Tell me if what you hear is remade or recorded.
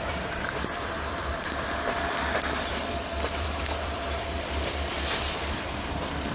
remade